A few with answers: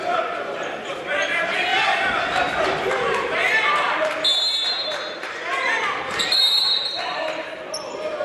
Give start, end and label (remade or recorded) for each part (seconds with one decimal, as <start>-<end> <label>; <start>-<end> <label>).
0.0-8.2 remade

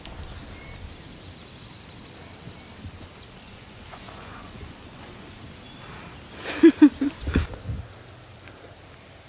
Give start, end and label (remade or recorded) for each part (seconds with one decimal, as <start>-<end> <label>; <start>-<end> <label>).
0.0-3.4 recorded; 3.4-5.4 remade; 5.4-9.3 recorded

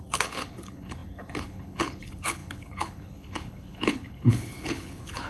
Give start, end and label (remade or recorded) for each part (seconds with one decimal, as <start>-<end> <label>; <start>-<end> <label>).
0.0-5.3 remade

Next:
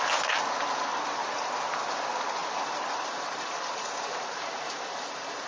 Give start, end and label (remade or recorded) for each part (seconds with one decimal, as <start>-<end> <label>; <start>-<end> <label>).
0.0-0.9 recorded; 0.9-1.5 remade; 1.5-2.4 recorded; 2.4-5.5 remade